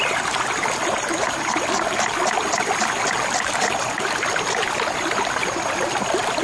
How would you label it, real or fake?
real